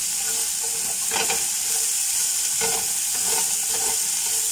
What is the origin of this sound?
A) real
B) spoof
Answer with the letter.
A